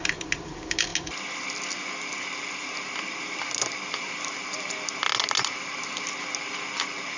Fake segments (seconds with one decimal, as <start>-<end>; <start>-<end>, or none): none